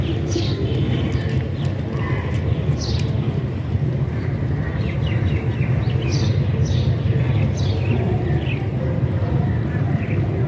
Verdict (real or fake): real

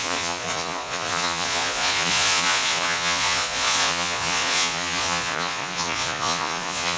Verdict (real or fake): fake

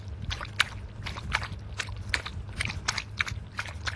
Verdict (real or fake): real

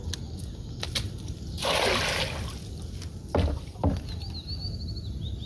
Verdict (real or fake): real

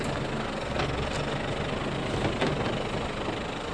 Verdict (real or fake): real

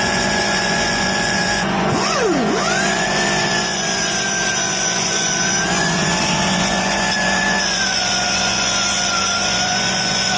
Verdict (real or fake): fake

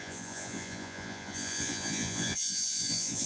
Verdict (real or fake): fake